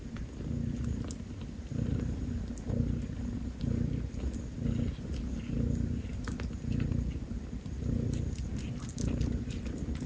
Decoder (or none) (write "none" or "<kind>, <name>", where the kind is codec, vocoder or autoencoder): none